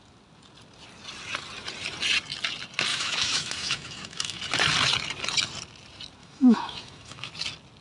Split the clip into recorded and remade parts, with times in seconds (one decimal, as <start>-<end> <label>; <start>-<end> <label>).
0.0-2.9 recorded; 2.9-4.4 remade; 4.4-6.2 recorded; 6.2-7.3 remade; 7.3-7.8 recorded